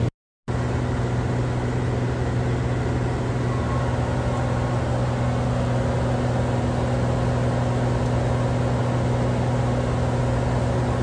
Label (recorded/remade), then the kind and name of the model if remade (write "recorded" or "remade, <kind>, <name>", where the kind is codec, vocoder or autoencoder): recorded